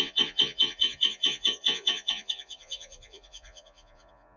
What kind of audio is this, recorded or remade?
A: remade